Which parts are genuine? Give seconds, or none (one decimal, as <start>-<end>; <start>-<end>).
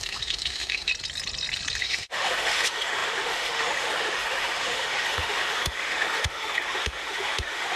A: 0.9-1.8